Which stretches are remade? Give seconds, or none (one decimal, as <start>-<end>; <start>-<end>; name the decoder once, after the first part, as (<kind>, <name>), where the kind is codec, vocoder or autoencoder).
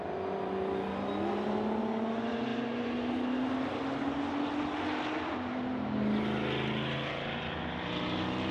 none